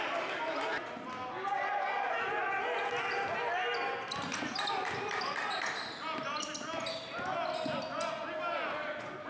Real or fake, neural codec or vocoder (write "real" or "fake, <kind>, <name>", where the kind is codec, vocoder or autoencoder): real